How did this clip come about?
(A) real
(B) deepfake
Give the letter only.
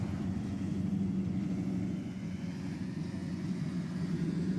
B